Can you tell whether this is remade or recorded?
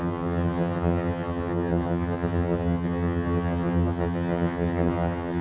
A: remade